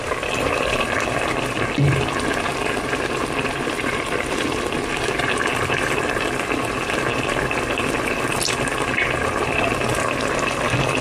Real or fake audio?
real